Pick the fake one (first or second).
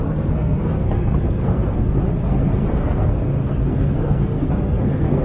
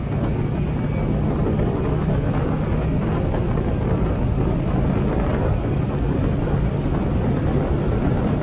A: first